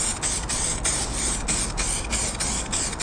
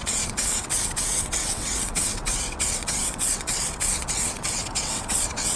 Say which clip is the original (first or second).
first